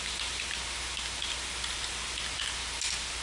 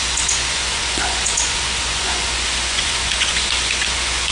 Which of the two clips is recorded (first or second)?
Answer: first